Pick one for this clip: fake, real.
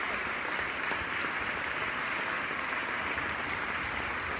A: real